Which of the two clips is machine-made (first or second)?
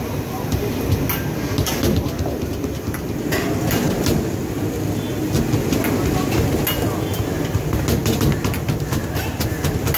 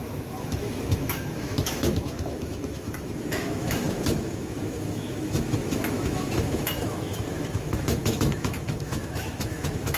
second